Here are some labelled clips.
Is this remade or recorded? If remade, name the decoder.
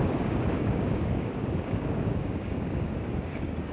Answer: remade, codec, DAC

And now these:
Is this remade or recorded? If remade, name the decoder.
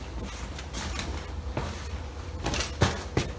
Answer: recorded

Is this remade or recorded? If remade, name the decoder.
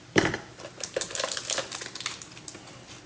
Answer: recorded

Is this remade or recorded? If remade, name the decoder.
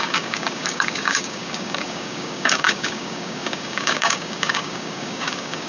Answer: remade, codec, DAC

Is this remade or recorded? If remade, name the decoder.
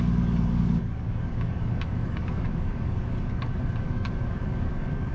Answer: remade, codec, DAC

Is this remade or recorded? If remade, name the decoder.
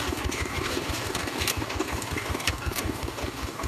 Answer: remade, codec, DAC